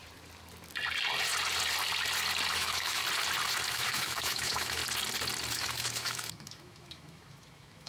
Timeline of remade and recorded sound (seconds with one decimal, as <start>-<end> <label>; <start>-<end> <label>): 0.0-2.5 recorded; 2.5-3.0 remade; 3.0-3.7 recorded; 3.7-4.8 remade; 4.8-5.5 recorded; 5.5-7.9 remade

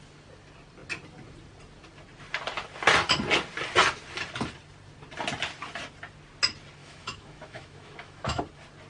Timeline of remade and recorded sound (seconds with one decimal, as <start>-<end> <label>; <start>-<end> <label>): 0.0-6.8 recorded; 6.8-8.4 remade; 8.4-8.9 recorded